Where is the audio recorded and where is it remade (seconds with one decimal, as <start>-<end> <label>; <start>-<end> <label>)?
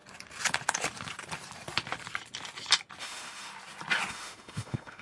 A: 0.0-3.0 recorded; 3.0-3.5 remade; 3.5-4.1 recorded; 4.1-5.0 remade